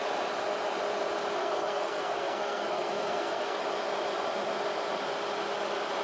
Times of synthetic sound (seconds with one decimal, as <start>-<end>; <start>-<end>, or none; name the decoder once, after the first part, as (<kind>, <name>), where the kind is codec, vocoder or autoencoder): 1.4-3.6 (codec, SNAC)